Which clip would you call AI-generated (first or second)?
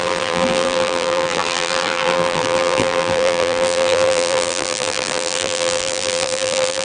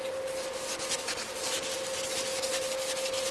first